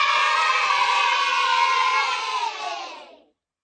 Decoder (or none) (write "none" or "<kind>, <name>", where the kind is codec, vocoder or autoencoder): vocoder, Vocos